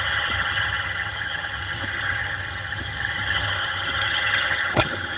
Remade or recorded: remade